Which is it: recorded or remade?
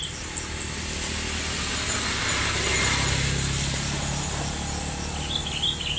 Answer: recorded